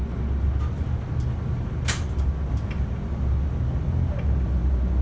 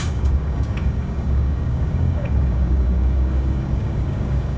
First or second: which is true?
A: first